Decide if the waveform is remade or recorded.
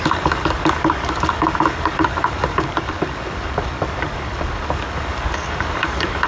remade